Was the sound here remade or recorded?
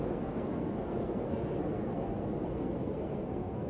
remade